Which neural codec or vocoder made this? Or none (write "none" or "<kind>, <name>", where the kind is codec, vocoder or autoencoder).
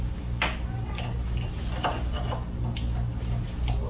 none